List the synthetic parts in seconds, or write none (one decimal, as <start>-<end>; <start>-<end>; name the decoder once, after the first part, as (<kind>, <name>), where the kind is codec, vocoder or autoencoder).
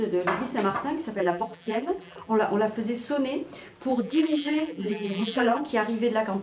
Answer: 1.2-2.3 (vocoder, BigVGAN v2); 3.9-5.6